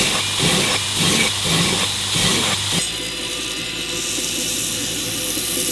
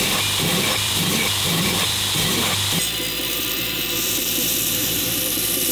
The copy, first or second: second